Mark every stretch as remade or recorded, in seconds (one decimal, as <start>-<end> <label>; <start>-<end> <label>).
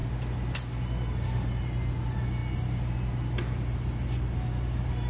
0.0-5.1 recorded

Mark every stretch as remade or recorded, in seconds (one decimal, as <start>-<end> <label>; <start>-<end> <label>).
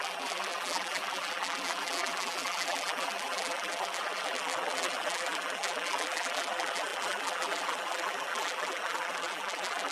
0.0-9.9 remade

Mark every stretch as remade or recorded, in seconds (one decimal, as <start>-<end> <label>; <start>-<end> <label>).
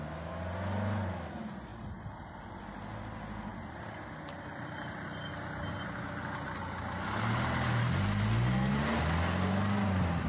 0.0-10.3 recorded